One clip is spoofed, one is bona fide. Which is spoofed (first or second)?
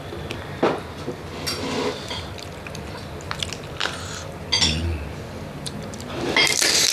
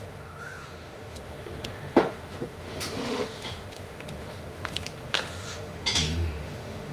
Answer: second